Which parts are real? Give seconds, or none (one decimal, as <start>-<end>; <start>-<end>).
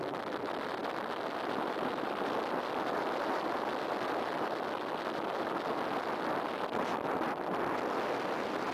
0.0-8.7